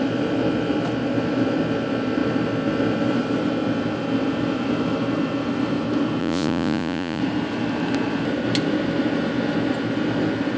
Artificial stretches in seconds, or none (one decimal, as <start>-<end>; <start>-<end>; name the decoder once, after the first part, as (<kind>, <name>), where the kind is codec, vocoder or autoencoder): 6.2-7.2 (vocoder, Vocos)